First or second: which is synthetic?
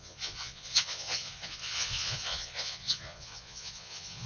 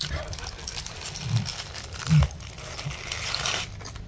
first